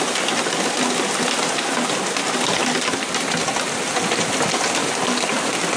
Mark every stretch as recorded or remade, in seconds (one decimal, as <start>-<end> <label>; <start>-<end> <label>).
0.0-5.8 recorded